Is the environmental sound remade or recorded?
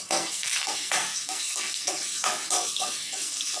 remade